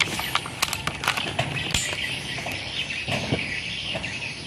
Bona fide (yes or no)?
yes